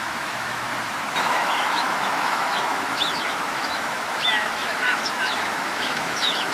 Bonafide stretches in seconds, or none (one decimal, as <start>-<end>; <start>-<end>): 0.7-1.2